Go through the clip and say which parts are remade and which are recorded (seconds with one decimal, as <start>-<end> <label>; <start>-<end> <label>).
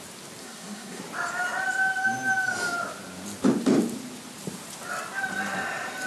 0.0-0.4 recorded; 0.4-1.0 remade; 1.0-6.1 recorded